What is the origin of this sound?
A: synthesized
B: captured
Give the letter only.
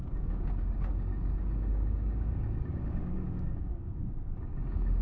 A